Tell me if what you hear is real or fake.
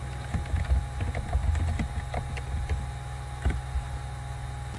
real